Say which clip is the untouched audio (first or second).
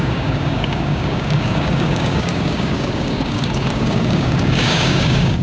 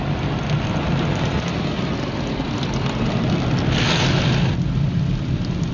second